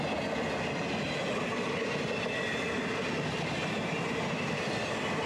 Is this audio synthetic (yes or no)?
no